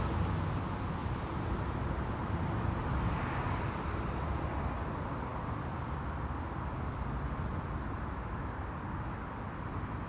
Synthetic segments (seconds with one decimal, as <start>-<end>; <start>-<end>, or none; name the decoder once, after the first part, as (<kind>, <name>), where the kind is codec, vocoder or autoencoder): 1.0-2.4 (vocoder, BigVGAN v2)